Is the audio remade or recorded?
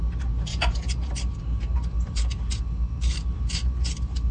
remade